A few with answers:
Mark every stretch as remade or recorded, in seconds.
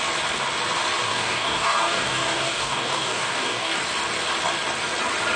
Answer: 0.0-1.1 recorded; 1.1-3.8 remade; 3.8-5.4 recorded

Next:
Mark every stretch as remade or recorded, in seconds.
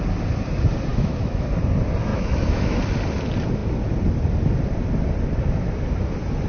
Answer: 0.0-0.9 recorded; 0.9-1.5 remade; 1.5-2.1 recorded; 2.1-2.8 remade; 2.8-6.5 recorded